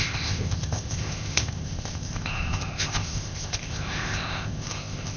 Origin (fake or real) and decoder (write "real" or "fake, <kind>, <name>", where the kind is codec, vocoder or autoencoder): fake, codec, ZipCodec